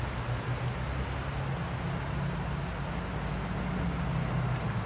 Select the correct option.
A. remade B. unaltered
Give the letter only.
B